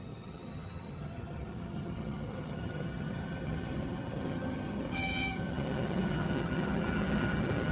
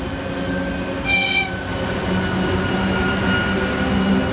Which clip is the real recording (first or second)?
second